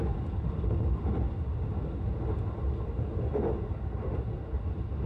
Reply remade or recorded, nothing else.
recorded